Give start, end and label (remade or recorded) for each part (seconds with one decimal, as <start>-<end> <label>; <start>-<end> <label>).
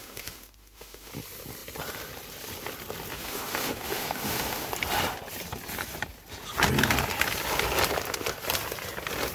0.0-1.1 remade; 1.1-3.1 recorded; 3.1-4.7 remade; 4.7-9.3 recorded